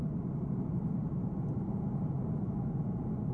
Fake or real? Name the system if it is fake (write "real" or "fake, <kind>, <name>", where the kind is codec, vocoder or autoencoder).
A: real